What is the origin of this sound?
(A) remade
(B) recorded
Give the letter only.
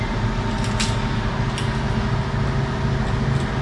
B